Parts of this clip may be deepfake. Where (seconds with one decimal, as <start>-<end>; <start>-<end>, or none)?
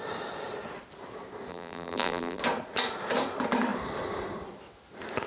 1.5-2.4